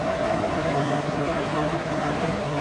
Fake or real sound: fake